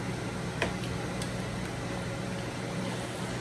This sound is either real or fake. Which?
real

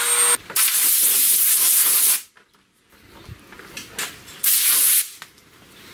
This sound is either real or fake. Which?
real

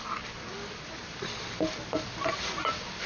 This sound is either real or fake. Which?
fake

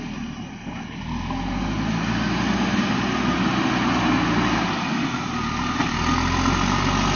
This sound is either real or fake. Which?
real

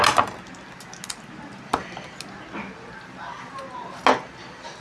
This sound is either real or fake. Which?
real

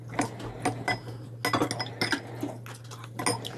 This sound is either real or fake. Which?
real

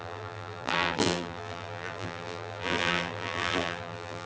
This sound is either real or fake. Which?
fake